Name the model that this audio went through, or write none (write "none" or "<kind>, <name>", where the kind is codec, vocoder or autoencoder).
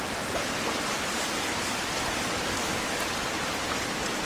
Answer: none